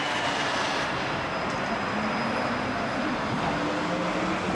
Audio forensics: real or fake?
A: real